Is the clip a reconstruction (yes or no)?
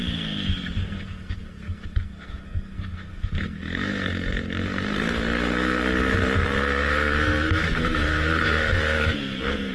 yes